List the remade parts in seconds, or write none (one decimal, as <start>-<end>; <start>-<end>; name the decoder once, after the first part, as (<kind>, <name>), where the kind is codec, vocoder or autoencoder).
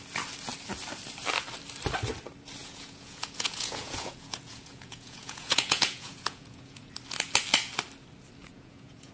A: 2.6-6.9 (vocoder, Vocos); 8.4-9.1